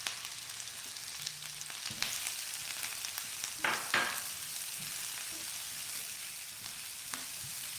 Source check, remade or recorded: recorded